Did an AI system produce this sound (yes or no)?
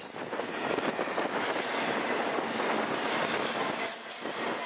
no